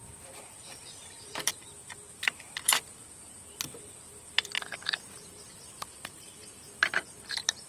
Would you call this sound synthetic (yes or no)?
yes